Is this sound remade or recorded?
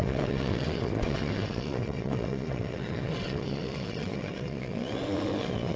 remade